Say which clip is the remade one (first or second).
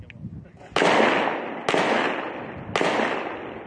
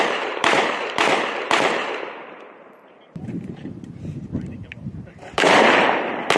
second